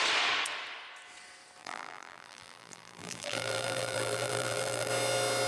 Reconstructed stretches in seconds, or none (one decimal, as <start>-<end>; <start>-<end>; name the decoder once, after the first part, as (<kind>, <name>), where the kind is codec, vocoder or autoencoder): 1.6-4.9 (vocoder, BigVGAN v2)